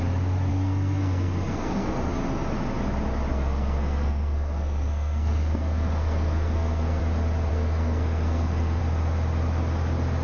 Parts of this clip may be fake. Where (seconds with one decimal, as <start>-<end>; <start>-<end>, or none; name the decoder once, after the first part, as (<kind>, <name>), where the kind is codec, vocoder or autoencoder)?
0.5-2.1 (codec, SNAC); 3.3-7.0; 7.5-8.8